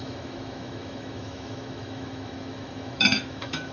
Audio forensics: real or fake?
fake